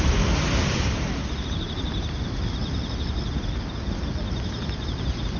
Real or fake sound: real